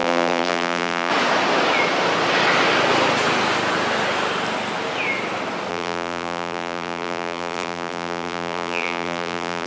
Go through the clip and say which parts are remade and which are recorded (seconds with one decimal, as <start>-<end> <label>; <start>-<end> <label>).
0.0-1.1 remade; 1.1-5.7 recorded; 5.7-9.7 remade